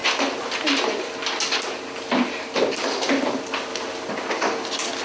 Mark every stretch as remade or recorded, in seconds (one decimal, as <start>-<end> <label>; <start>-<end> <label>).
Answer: 0.0-5.0 recorded